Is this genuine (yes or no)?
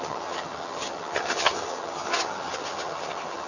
no